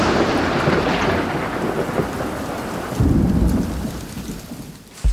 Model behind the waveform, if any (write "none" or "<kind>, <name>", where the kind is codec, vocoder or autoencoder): none